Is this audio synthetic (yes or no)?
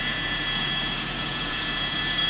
yes